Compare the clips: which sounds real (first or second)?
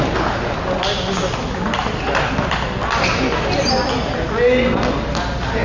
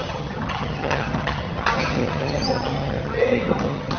first